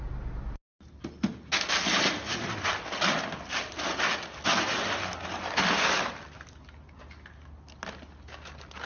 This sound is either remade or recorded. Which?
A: recorded